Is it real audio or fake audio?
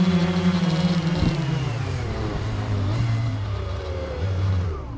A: fake